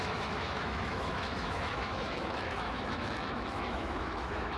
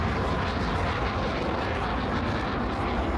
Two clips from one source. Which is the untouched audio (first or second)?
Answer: second